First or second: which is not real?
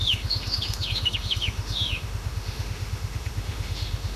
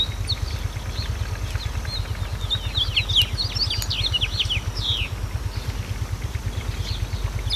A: first